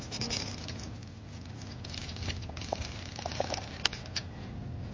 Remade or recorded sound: recorded